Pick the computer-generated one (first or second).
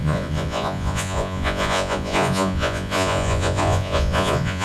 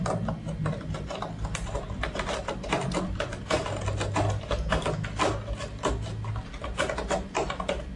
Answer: first